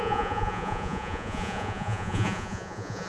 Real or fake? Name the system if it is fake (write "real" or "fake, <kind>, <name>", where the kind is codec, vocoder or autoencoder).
fake, vocoder, Vocos